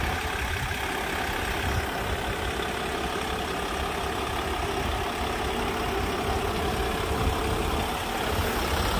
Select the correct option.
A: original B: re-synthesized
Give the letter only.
A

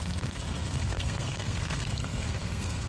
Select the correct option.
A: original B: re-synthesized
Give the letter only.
B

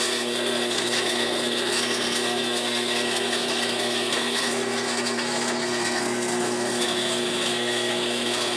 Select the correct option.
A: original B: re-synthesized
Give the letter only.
B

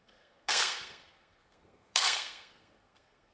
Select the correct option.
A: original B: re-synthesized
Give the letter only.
B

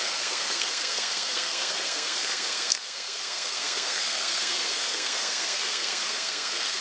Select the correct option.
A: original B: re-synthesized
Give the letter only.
B